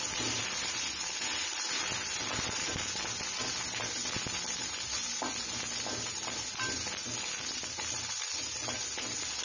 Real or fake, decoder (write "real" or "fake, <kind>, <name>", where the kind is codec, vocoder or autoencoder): real